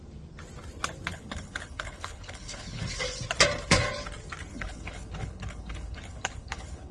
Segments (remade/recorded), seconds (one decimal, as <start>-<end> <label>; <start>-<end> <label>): 0.0-1.1 recorded; 1.1-2.8 remade; 2.8-4.5 recorded; 4.5-6.9 remade